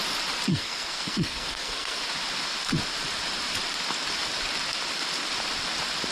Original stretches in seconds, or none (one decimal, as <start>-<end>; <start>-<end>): 0.0-0.5; 2.0-6.1